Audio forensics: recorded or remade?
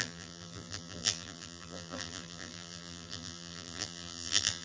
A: remade